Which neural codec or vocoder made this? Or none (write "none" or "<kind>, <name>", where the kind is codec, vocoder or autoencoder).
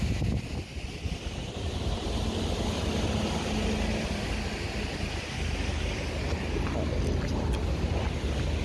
none